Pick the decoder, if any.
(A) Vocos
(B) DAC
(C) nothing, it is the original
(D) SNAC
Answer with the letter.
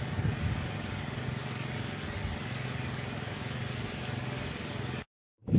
B